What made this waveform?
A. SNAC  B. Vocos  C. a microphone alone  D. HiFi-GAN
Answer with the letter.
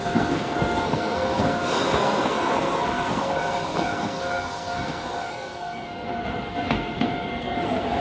A